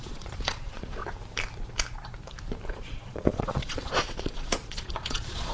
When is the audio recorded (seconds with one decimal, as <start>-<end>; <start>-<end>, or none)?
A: 1.0-2.7